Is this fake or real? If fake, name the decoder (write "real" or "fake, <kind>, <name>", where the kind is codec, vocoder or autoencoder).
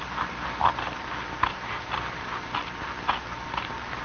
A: real